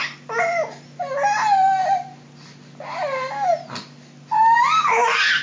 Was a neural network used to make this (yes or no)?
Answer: no